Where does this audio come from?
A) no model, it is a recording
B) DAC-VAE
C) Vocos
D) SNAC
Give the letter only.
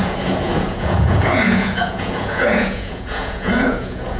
C